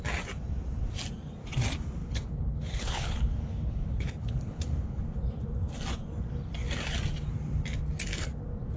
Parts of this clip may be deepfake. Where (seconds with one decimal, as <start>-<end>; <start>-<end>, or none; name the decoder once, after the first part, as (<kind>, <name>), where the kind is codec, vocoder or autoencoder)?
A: 2.0-5.0 (codec, HILCodec)